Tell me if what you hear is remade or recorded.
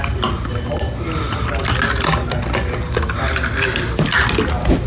recorded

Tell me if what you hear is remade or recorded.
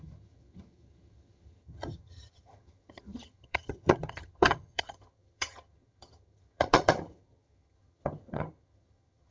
remade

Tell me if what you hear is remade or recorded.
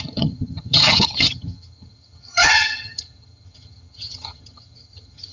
remade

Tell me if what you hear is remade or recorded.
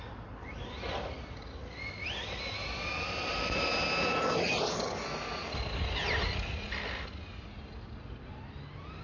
recorded